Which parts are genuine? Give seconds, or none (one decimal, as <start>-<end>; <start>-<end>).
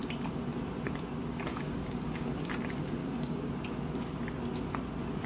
0.0-1.5; 2.5-3.0; 3.5-5.3